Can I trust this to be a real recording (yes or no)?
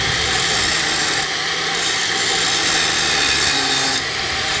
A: yes